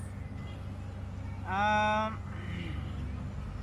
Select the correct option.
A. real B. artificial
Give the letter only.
A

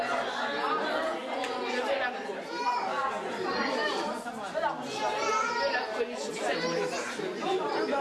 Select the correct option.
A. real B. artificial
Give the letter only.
A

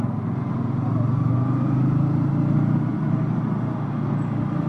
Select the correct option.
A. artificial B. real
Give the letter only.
B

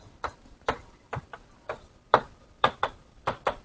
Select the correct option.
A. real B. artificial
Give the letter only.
B